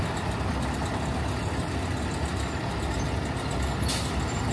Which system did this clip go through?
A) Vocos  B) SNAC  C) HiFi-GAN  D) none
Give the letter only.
D